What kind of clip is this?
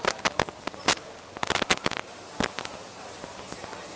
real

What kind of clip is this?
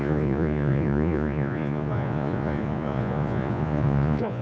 fake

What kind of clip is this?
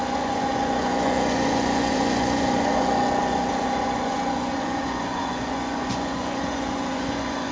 fake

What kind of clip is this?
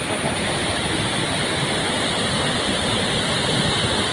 real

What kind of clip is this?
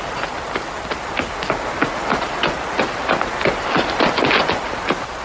real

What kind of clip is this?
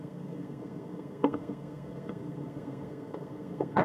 fake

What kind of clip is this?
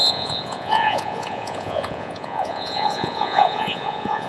fake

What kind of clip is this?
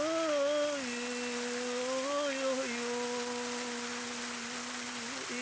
real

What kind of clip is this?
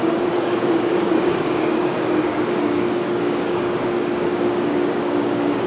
fake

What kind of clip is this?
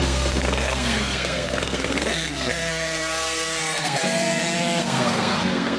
fake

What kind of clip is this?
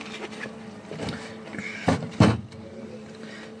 fake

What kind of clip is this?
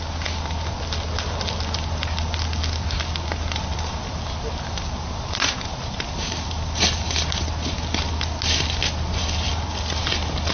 real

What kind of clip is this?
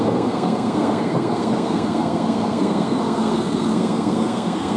fake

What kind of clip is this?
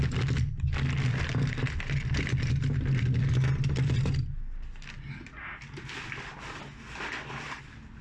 real